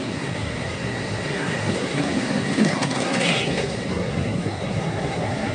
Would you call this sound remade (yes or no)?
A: yes